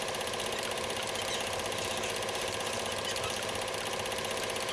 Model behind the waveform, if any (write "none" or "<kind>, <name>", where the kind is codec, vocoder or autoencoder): none